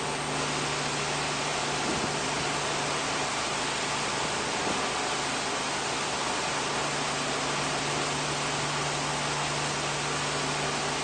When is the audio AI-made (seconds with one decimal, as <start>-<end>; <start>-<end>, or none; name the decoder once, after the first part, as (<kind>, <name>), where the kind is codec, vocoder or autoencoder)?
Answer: none